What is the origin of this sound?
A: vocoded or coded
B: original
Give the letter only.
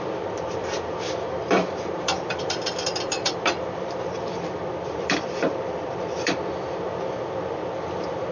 A